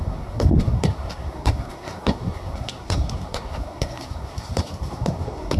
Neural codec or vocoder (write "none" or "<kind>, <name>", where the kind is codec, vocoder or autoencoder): codec, SNAC